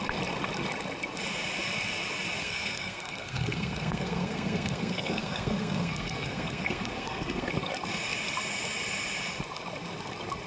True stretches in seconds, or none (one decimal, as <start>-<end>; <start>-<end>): 0.0-2.4; 7.5-10.5